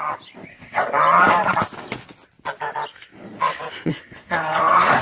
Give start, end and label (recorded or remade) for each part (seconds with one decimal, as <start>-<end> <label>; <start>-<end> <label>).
0.0-0.5 recorded; 0.5-1.0 remade; 1.0-3.9 recorded; 3.9-5.0 remade